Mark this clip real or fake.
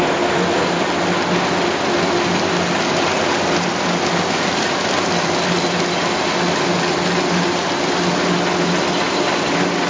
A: real